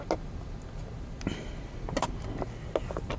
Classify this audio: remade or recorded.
recorded